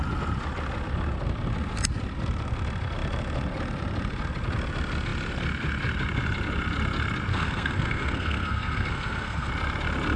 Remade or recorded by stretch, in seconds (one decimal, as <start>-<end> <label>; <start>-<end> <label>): 0.0-7.3 recorded; 7.3-9.5 remade; 9.5-10.2 recorded